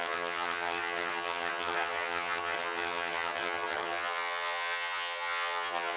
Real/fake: fake